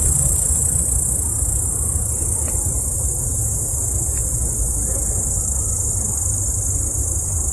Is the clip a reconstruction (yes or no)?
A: no